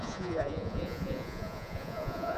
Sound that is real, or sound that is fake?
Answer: fake